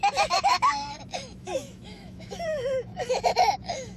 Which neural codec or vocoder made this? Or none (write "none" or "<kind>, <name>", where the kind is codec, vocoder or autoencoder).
autoencoder, DAC-VAE